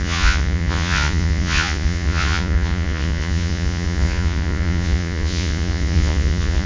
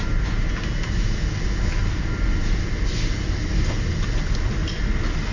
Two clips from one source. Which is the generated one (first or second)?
first